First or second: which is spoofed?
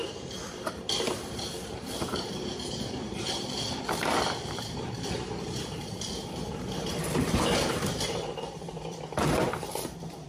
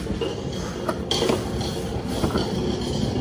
first